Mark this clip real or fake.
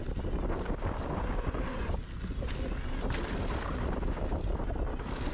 real